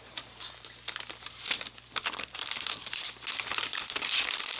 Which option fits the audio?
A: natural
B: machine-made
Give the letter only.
A